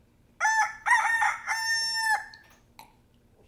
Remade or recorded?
recorded